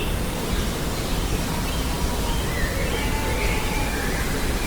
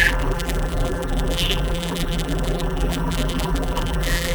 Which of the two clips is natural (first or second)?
first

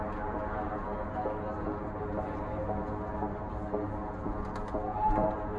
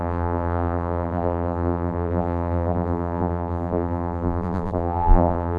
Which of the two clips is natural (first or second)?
first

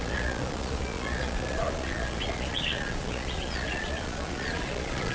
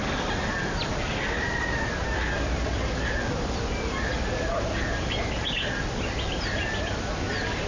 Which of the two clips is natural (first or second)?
second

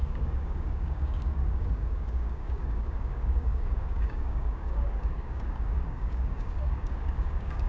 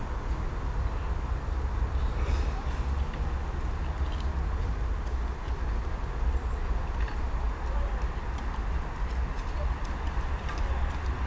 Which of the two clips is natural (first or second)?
second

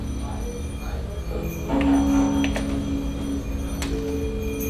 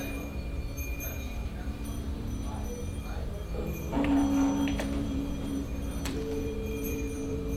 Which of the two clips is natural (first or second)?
first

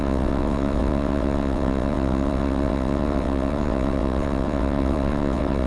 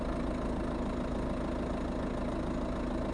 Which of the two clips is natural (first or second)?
second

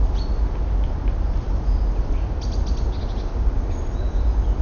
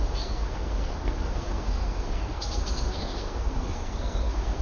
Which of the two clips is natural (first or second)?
first